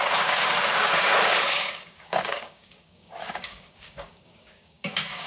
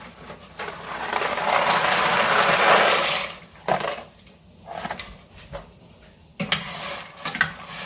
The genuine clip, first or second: second